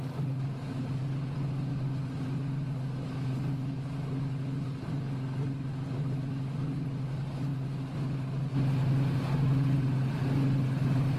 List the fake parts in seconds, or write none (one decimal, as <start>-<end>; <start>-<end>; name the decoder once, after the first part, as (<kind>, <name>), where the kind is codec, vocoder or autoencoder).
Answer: none